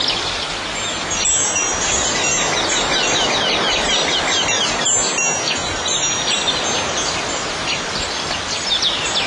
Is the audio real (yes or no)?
yes